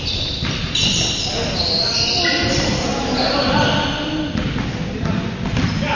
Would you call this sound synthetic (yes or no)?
no